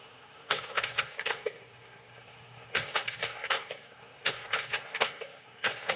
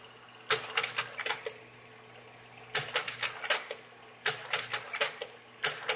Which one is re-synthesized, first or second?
first